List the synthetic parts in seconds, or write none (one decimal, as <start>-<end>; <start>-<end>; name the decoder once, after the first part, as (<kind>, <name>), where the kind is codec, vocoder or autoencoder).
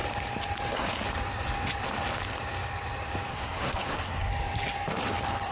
3.3-4.3 (codec, SNAC)